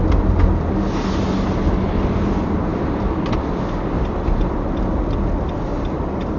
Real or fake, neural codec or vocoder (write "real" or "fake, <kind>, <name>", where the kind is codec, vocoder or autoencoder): real